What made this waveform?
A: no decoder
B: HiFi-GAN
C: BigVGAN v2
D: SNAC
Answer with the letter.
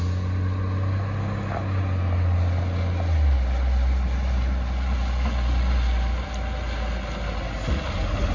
A